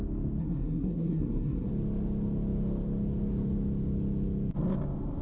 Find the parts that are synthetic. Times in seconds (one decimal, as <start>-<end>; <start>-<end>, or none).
0.4-1.7